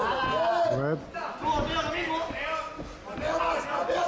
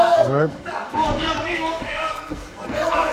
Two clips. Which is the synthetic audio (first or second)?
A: second